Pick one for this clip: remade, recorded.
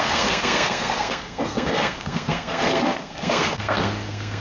remade